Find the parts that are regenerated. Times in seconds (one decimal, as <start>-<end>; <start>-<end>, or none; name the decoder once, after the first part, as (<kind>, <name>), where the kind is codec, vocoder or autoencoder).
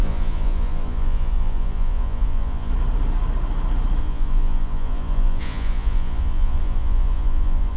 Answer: 0.0-2.7 (vocoder, Vocos); 4.0-7.8